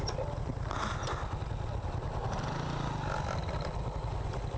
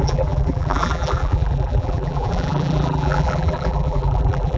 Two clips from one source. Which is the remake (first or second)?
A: second